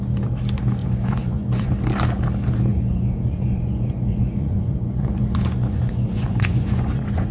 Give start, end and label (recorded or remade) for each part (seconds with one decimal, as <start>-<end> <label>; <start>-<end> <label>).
0.0-0.8 recorded; 0.8-1.7 remade; 1.7-2.7 recorded; 2.7-7.3 remade